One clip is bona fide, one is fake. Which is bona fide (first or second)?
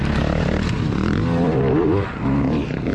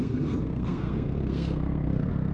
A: first